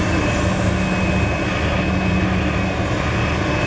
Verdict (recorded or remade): recorded